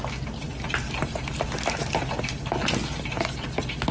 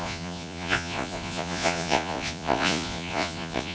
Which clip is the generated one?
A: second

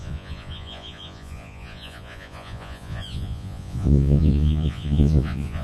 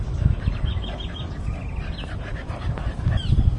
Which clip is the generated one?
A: first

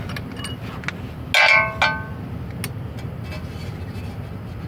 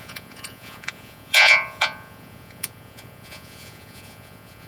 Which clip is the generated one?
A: second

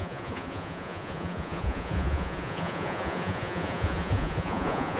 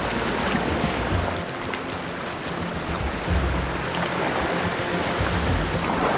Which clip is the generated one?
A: first